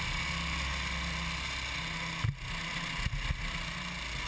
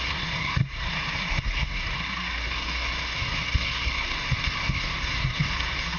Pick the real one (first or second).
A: first